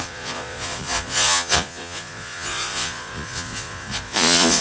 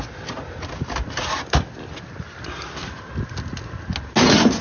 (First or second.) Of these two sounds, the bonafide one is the second